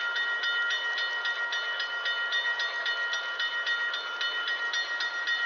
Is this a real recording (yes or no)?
yes